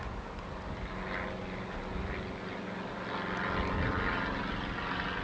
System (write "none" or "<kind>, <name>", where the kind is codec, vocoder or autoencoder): none